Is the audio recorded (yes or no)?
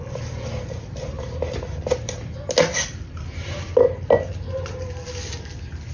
yes